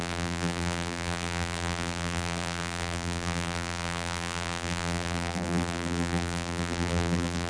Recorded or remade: remade